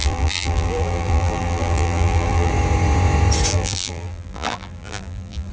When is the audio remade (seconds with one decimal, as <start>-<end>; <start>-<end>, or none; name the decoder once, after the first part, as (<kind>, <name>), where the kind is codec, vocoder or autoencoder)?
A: 0.0-2.5 (vocoder, BigVGAN v2); 3.5-5.5